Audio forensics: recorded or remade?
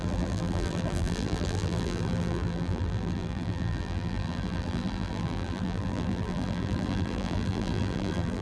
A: remade